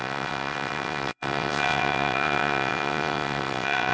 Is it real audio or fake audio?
fake